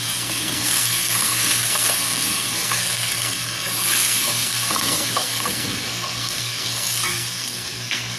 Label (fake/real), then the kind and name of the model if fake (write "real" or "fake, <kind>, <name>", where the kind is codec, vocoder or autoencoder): fake, codec, SNAC